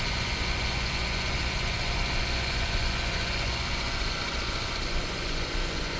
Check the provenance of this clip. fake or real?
fake